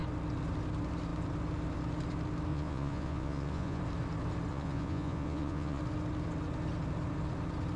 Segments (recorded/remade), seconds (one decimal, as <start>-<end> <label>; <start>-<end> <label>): 0.0-2.5 recorded; 2.5-3.8 remade; 3.8-4.5 recorded; 4.5-5.8 remade; 5.8-7.8 recorded